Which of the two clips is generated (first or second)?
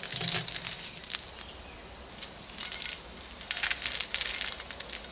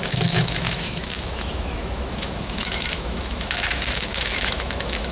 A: second